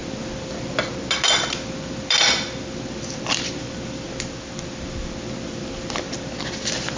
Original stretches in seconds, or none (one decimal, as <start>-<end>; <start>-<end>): 0.0-7.0